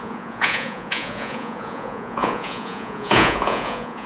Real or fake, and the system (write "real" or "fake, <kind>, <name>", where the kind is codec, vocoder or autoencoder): fake, vocoder, Vocos